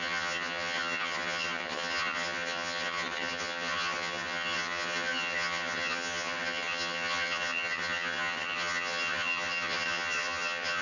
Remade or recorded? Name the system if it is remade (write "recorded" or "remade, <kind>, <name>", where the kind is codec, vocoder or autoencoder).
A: remade, vocoder, HiFi-GAN